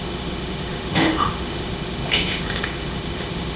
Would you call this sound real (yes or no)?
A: no